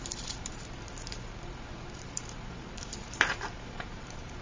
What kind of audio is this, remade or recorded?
remade